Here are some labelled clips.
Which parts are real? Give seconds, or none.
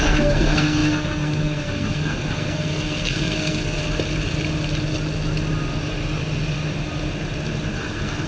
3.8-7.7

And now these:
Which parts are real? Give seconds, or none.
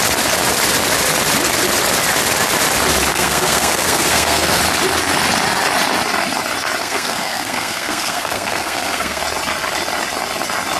0.0-3.1; 4.6-6.8; 9.2-10.8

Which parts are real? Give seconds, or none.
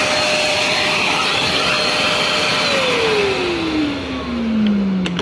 0.0-0.5; 1.7-5.2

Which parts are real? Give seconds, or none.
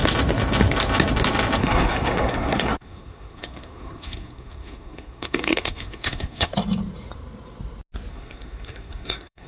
0.0-1.6; 6.5-8.1